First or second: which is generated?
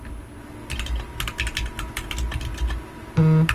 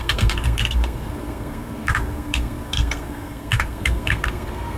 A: second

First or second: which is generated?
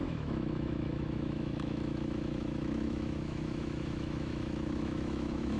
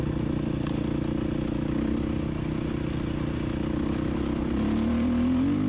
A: first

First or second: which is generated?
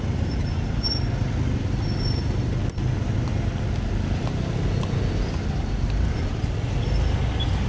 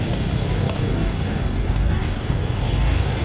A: second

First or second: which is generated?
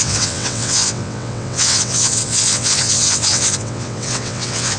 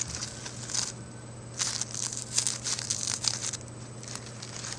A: first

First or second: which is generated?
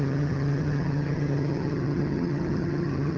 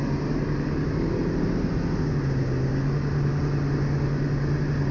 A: first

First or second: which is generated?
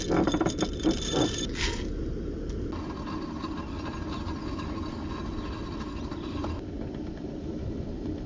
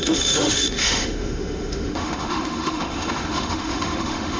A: second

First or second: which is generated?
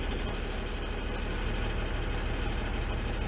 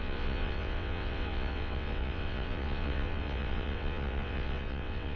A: second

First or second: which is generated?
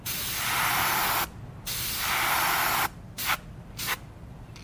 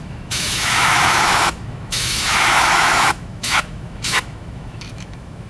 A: second